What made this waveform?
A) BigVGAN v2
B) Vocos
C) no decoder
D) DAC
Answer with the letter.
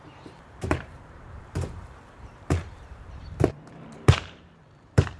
A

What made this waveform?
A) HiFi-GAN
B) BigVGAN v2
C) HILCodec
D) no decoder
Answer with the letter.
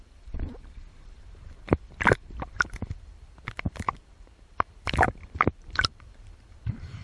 B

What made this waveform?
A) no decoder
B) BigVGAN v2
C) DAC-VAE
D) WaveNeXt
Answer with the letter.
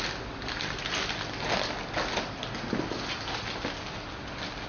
A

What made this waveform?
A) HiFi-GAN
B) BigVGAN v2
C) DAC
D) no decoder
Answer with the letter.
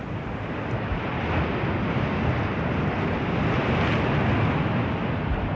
D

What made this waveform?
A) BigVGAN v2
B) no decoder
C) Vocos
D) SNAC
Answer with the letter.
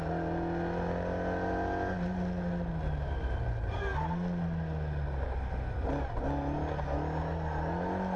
B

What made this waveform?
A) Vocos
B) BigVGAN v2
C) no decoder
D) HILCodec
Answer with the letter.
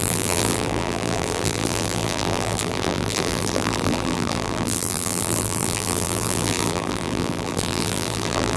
B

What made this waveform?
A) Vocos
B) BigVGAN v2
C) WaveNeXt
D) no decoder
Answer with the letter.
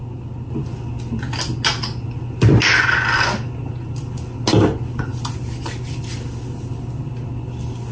D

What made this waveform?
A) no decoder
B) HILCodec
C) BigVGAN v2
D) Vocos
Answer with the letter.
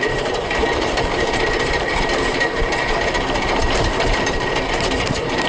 C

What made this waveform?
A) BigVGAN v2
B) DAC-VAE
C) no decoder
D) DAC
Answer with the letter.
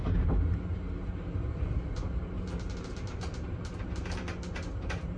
A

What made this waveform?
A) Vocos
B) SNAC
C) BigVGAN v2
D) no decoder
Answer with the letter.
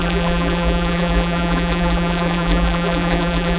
C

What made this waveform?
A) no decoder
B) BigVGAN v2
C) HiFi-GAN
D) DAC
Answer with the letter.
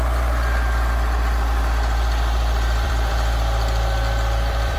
B